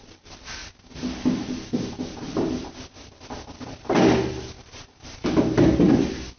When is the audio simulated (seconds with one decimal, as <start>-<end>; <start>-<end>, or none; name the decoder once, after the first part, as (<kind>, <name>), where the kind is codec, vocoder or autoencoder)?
none